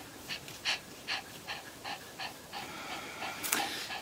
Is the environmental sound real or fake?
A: fake